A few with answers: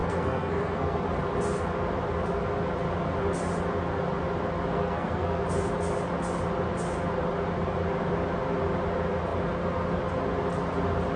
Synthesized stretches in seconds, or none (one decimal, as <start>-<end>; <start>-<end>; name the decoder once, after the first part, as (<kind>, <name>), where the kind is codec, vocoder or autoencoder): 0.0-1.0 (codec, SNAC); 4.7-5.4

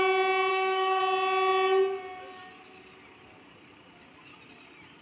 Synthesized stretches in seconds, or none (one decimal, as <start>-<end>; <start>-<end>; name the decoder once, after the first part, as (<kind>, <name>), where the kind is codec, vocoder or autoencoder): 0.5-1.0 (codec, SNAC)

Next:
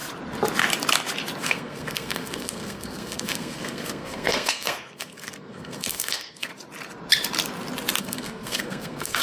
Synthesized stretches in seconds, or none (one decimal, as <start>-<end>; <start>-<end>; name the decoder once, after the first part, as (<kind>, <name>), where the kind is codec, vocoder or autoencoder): 1.4-6.5 (codec, SNAC); 8.0-9.2